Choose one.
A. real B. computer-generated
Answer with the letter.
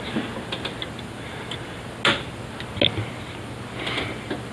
A